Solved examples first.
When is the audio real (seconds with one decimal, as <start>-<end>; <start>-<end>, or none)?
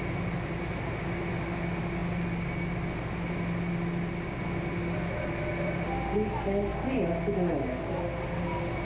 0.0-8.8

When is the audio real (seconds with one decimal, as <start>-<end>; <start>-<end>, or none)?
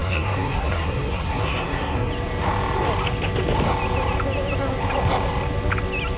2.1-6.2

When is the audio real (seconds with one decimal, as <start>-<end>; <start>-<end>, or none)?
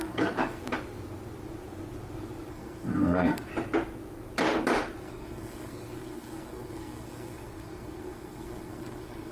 0.6-2.5; 3.5-5.0